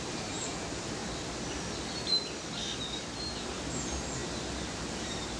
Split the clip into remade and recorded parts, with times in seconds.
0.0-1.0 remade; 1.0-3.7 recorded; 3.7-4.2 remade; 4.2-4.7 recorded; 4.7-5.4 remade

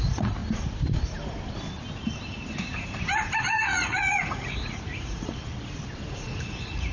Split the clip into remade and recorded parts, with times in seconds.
0.0-0.4 remade; 0.4-3.4 recorded; 3.4-5.4 remade; 5.4-6.1 recorded; 6.1-6.9 remade